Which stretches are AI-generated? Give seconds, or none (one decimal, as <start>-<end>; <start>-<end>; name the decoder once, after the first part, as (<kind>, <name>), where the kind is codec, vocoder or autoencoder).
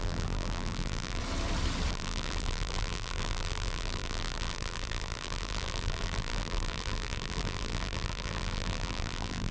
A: 0.0-1.2 (vocoder, BigVGAN v2); 1.9-9.5